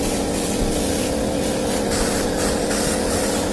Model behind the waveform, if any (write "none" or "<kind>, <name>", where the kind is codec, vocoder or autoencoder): none